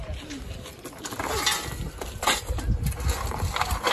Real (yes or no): yes